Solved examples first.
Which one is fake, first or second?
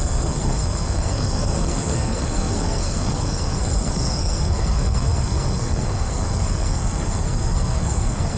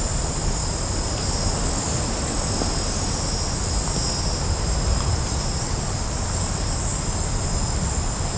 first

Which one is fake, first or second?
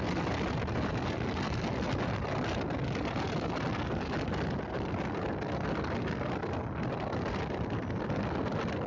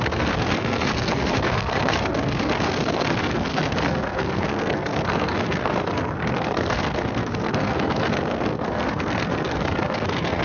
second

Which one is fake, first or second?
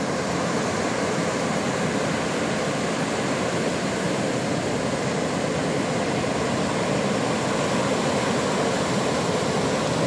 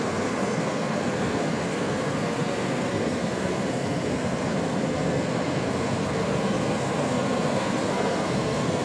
second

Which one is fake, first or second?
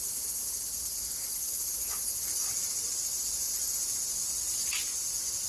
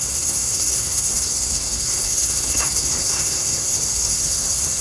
second